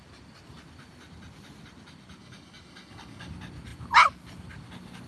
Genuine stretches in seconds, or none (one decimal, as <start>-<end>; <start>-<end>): 0.0-2.2; 3.3-5.1